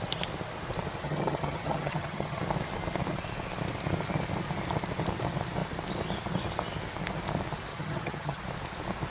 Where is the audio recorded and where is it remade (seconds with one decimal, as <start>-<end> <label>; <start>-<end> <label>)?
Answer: 0.0-1.0 recorded; 1.0-2.4 remade; 2.4-7.7 recorded; 7.7-8.4 remade; 8.4-9.1 recorded